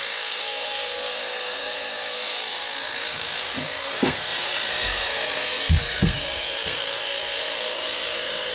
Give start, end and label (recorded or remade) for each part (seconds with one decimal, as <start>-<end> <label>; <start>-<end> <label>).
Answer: 0.0-8.5 remade